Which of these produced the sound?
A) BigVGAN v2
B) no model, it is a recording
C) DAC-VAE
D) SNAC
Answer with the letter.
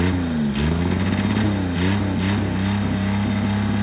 B